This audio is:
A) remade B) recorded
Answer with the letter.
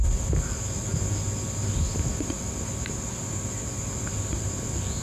B